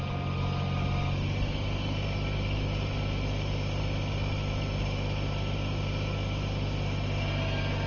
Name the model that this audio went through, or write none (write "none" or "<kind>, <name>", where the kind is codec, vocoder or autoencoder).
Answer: none